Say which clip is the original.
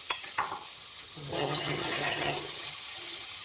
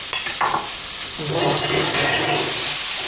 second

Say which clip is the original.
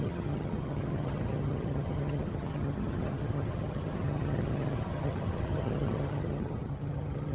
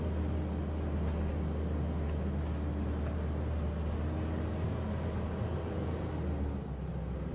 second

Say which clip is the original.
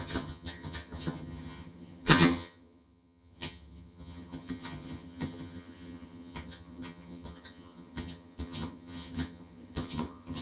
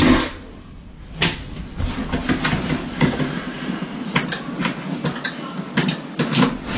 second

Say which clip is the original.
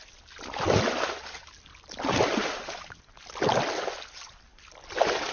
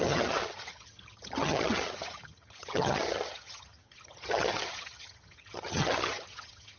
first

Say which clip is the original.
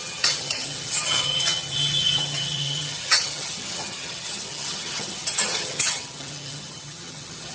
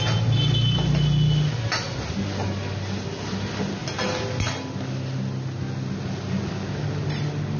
second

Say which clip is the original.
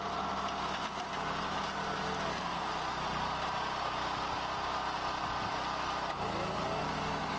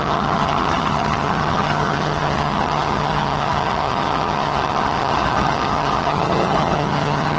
first